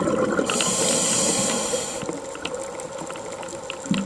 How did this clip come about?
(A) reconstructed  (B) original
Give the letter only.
B